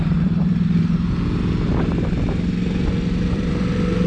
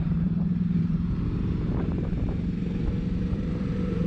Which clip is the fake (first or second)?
second